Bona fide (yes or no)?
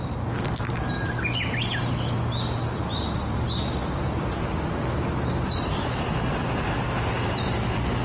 yes